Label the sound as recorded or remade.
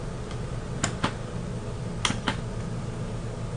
recorded